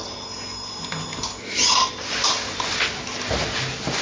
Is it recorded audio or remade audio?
recorded